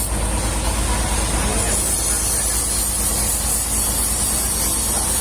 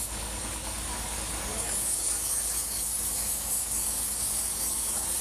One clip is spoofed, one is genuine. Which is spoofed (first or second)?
second